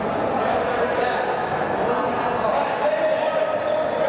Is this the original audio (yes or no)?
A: yes